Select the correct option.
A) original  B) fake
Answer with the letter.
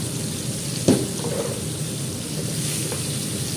A